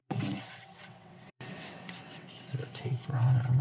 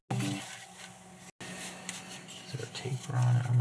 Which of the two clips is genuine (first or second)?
second